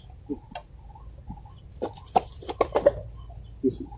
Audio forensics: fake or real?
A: real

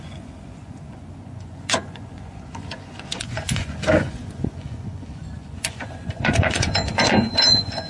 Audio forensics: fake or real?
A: fake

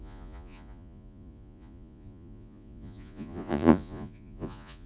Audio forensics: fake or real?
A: fake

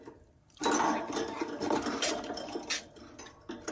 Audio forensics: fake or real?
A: real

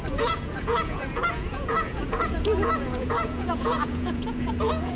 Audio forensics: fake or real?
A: fake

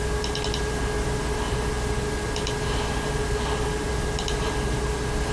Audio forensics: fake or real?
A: real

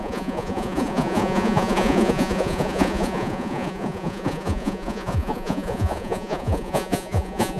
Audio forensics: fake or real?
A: fake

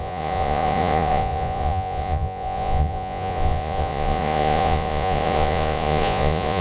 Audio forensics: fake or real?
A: fake